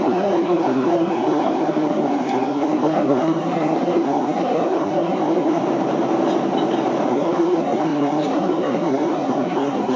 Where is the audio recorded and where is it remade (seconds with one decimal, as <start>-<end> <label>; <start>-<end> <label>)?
0.0-5.6 remade; 5.6-7.1 recorded; 7.1-10.0 remade